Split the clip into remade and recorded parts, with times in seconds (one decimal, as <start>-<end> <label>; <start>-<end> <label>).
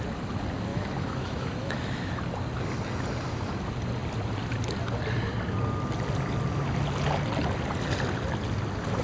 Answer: 0.0-0.7 recorded; 0.7-2.2 remade; 2.2-9.0 recorded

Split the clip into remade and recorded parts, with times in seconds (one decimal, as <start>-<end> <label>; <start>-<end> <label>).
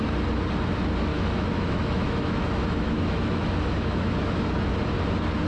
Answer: 0.0-1.1 recorded; 1.1-4.4 remade; 4.4-5.5 recorded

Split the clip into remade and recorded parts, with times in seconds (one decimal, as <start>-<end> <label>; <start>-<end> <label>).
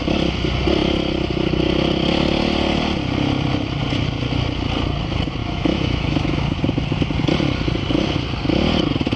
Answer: 0.0-5.4 recorded; 5.4-6.6 remade; 6.6-9.2 recorded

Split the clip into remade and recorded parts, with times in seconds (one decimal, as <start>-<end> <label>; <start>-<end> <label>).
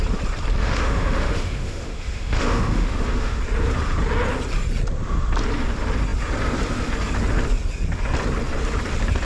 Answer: 0.0-0.6 recorded; 0.6-3.4 remade; 3.4-9.2 recorded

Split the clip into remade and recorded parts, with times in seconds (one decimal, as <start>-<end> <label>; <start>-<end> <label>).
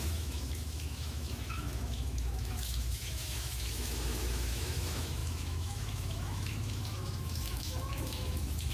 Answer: 0.0-8.7 remade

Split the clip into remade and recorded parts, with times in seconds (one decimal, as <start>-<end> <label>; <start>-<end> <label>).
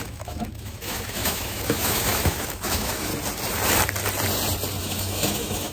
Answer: 0.0-3.1 remade; 3.1-4.8 recorded; 4.8-5.7 remade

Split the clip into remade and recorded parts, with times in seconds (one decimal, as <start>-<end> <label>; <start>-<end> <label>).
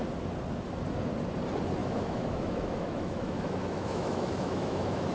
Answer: 0.0-1.8 recorded; 1.8-5.1 remade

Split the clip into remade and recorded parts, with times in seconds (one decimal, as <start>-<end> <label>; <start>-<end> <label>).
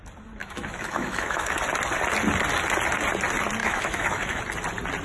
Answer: 0.0-0.4 recorded; 0.4-1.6 remade; 1.6-3.6 recorded; 3.6-4.4 remade; 4.4-5.0 recorded